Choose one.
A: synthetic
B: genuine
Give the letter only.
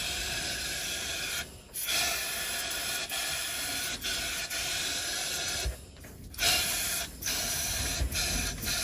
B